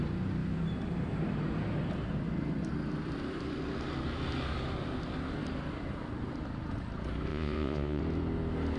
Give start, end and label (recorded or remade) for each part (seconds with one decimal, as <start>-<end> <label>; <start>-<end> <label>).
0.0-7.3 recorded; 7.3-8.0 remade; 8.0-8.8 recorded